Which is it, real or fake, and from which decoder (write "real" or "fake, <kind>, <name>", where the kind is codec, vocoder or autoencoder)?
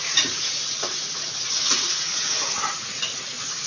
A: fake, vocoder, Vocos